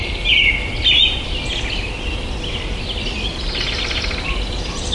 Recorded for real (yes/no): yes